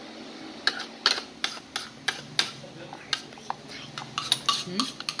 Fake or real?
real